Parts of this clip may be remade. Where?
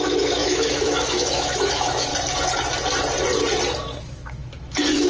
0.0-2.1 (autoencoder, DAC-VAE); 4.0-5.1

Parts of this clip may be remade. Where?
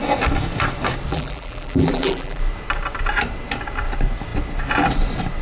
1.1-2.4 (vocoder, BigVGAN v2)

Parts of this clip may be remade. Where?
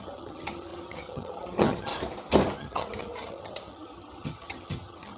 0.0-1.9 (vocoder, HiFi-GAN); 2.6-5.2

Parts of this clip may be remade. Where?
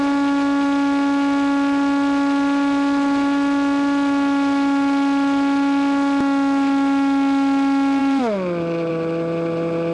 8.0-8.9 (vocoder, BigVGAN v2)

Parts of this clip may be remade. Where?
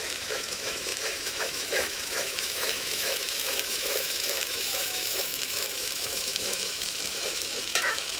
0.0-8.2 (autoencoder, DAC-VAE)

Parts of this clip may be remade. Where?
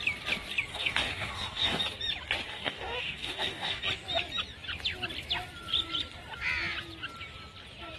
0.7-1.8 (codec, DAC); 2.5-3.8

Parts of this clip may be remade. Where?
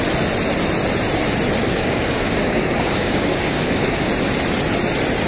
1.6-4.1 (codec, DAC)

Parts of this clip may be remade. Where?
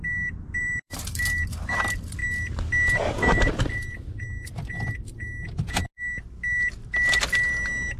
0.6-1.2 (vocoder, BigVGAN v2)